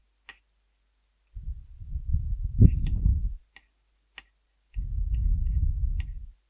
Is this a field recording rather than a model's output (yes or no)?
yes